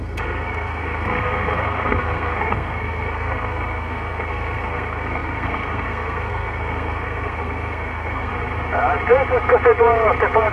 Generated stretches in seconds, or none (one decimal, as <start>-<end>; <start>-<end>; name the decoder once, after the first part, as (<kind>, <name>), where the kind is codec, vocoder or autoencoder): 0.0-8.3 (codec, SNAC)